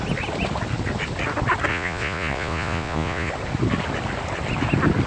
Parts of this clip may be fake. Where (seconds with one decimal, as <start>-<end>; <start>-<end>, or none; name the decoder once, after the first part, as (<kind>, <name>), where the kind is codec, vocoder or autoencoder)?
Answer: 1.7-3.3 (vocoder, Vocos)